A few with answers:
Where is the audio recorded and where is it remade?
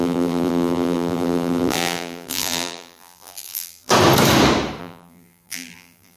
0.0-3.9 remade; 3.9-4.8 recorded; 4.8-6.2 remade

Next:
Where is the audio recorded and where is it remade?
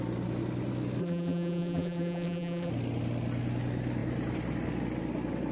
0.0-1.0 recorded; 1.0-2.7 remade; 2.7-5.5 recorded